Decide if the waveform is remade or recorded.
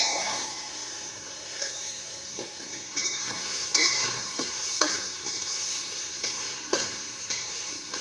remade